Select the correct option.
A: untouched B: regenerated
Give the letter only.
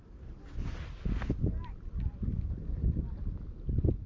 A